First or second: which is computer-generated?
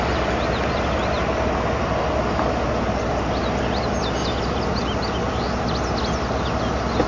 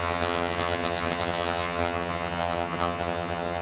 second